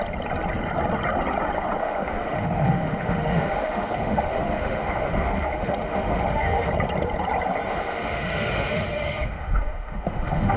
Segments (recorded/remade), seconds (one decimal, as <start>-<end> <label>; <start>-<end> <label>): 0.0-1.8 recorded; 1.8-6.7 remade; 6.7-7.7 recorded; 7.7-10.6 remade